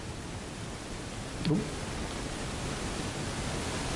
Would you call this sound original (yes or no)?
yes